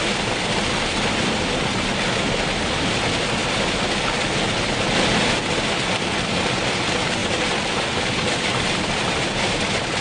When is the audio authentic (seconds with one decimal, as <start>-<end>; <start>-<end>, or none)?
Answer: 0.0-3.4; 4.2-7.2

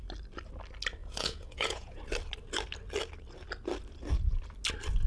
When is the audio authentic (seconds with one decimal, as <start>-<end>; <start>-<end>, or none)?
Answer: 0.0-1.0; 2.0-5.1

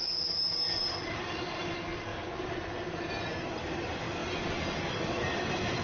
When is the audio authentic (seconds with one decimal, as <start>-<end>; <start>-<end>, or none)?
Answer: 0.0-0.9; 2.1-2.7; 4.2-4.8

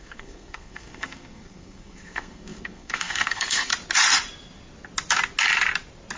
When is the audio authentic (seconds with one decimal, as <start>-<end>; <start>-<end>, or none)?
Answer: 3.7-6.2

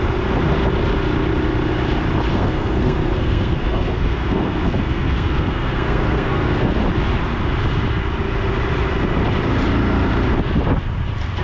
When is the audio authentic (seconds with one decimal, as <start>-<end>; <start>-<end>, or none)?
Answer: 0.0-2.3; 6.7-11.4

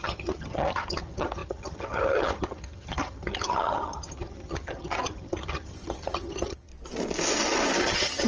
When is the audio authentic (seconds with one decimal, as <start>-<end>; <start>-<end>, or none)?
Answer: 6.7-7.8

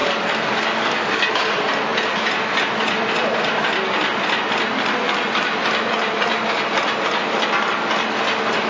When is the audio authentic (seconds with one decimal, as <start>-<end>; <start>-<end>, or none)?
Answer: 1.3-8.7

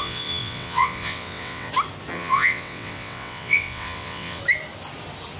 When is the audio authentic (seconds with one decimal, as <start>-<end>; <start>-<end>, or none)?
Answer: 1.7-2.1; 4.4-5.4